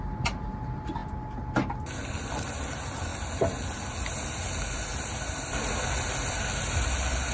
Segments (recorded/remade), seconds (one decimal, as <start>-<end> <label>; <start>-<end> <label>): 0.0-7.3 recorded